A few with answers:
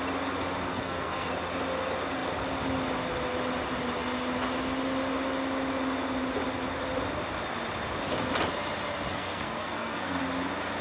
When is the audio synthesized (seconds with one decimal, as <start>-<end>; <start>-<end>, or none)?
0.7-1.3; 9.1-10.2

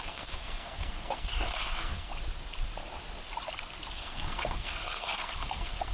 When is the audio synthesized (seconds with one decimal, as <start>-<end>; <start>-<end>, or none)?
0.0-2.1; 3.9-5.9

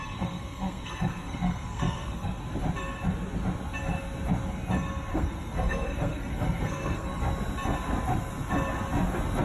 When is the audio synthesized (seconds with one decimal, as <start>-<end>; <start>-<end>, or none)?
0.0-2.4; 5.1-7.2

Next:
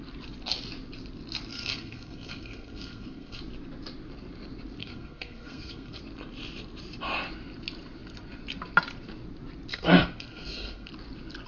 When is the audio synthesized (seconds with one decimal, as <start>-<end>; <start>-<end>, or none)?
1.5-3.4; 4.8-6.0; 9.7-10.9

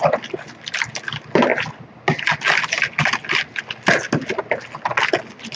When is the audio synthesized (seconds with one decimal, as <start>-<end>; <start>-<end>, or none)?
none